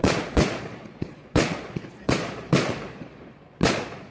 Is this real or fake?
fake